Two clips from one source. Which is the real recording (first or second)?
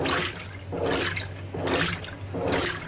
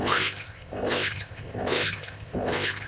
first